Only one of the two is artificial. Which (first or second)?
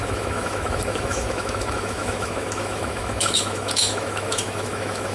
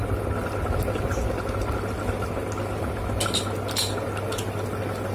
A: first